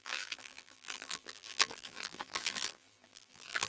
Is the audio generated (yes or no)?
yes